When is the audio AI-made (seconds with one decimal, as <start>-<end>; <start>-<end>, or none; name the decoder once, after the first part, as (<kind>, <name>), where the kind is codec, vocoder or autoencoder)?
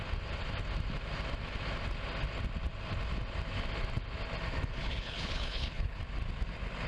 4.8-6.0 (codec, HILCodec)